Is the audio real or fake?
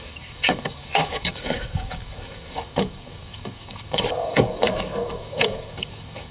fake